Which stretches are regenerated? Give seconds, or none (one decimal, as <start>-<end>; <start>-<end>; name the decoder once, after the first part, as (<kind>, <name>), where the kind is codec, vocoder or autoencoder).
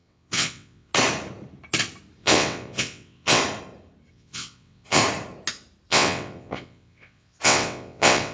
0.0-0.9 (vocoder, WaveNeXt); 2.2-3.4; 4.1-5.0; 5.9-8.3